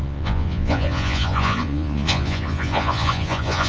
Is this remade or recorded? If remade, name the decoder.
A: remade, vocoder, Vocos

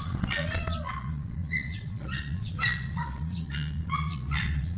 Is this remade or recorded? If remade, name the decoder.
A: remade, vocoder, Vocos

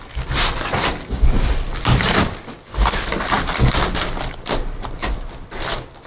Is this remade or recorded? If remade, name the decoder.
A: recorded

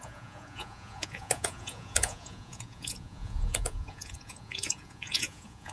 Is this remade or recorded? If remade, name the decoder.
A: remade, vocoder, Vocos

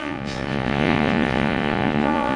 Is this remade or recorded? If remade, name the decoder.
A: remade, vocoder, Vocos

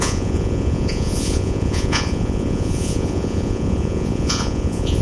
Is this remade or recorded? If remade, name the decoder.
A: remade, vocoder, Vocos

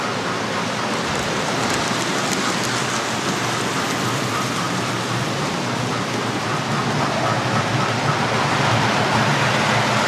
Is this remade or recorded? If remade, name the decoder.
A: recorded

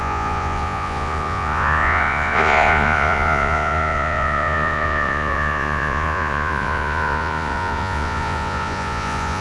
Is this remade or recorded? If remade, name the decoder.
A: remade, vocoder, Vocos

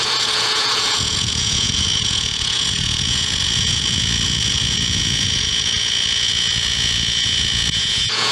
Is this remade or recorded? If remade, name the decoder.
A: remade, vocoder, Vocos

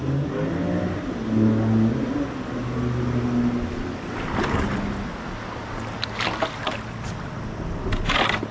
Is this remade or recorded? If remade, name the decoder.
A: recorded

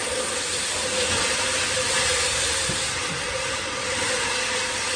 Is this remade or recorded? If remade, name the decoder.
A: recorded